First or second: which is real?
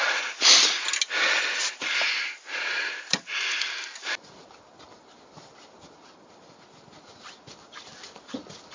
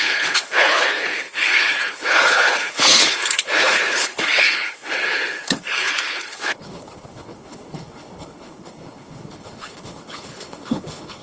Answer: first